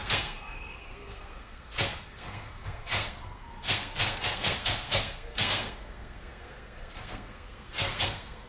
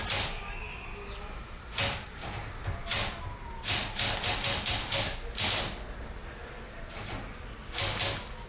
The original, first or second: second